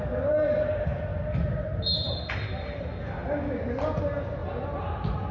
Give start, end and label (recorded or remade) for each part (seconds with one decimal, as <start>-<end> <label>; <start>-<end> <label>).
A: 0.0-5.3 recorded